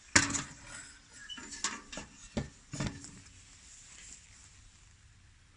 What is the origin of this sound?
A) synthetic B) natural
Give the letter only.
B